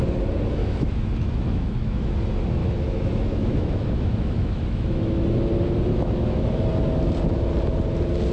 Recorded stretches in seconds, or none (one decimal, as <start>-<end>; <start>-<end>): 0.0-0.6; 2.2-2.6; 5.2-5.9; 6.7-8.3